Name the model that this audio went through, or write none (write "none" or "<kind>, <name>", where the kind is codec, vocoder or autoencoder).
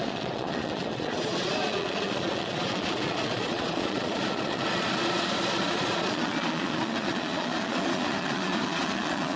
vocoder, Vocos